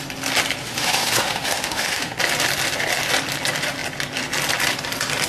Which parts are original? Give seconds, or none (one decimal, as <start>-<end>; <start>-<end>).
0.0-0.6; 2.2-5.3